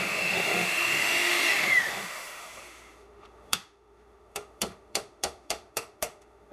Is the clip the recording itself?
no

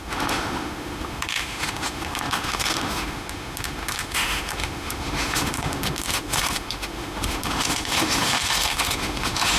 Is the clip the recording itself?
no